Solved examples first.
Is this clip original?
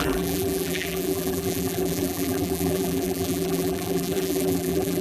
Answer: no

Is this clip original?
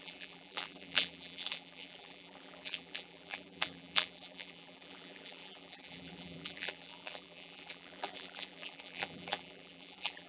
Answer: no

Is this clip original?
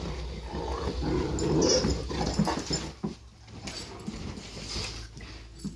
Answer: yes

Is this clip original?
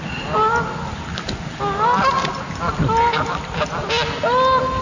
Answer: yes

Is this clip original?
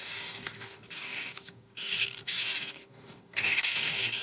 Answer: no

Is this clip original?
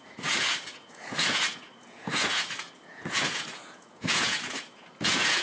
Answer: no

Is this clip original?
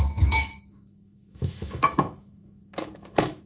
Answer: no